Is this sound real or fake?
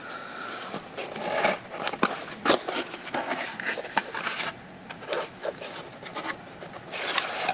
real